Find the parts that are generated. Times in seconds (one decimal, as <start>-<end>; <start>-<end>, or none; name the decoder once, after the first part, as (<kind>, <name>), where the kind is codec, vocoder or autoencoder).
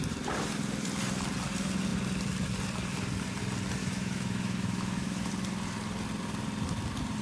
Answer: 3.8-5.3 (autoencoder, DAC-VAE)